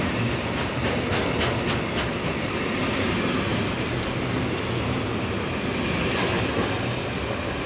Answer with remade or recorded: recorded